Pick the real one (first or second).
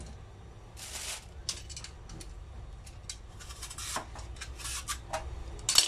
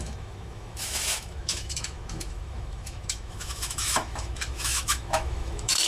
first